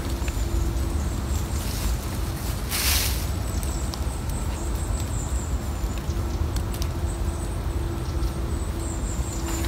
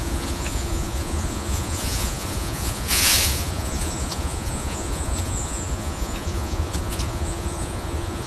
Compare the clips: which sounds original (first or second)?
first